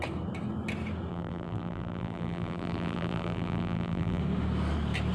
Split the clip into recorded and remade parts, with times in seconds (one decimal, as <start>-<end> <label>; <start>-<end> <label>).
0.0-1.1 recorded; 1.1-4.2 remade; 4.2-5.1 recorded